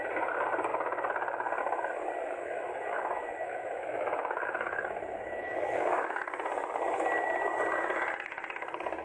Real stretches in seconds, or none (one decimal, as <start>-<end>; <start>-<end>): 0.0-2.4; 6.2-9.0